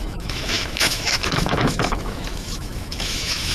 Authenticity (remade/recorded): remade